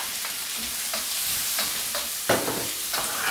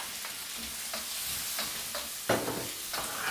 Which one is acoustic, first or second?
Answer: second